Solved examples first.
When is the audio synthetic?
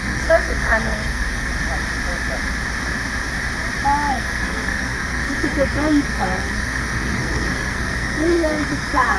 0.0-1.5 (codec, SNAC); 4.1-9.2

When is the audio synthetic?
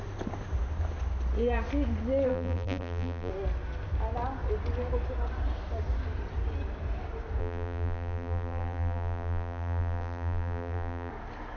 2.3-3.3 (vocoder, BigVGAN v2); 7.4-11.1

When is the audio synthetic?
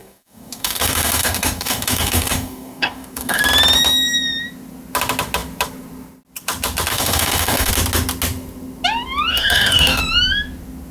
0.0-3.4 (codec, DAC); 6.9-7.7; 9.3-10.0